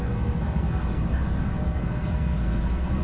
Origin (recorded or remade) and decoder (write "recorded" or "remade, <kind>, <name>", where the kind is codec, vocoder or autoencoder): remade, codec, SNAC